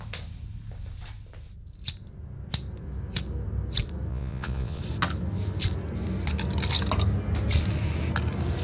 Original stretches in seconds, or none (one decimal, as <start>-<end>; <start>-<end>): 0.0-4.1; 4.8-8.6